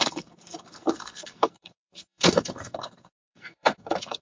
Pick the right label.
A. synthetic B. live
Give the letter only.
A